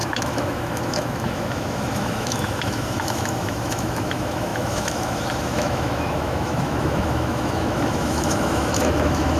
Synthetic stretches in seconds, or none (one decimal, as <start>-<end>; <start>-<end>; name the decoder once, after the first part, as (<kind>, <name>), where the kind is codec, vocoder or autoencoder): 0.0-9.4 (autoencoder, DAC-VAE)